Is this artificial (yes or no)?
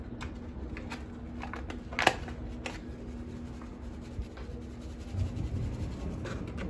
no